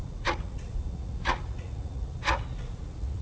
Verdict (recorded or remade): remade